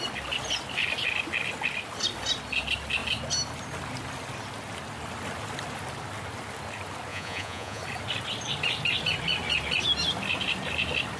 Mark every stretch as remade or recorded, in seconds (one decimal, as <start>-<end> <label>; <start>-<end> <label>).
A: 0.0-7.1 recorded; 7.1-7.8 remade; 7.8-11.2 recorded